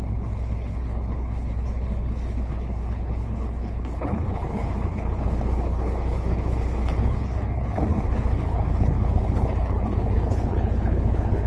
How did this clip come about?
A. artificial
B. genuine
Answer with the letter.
A